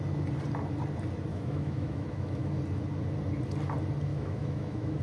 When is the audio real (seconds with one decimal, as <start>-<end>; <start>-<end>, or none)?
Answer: 0.0-1.3; 2.6-4.1